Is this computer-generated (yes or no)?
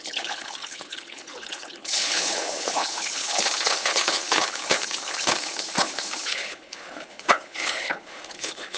yes